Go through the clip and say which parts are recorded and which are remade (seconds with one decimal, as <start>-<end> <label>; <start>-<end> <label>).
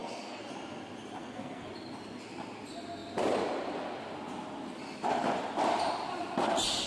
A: 0.0-0.5 remade; 0.5-1.2 recorded; 1.2-1.7 remade; 1.7-6.9 recorded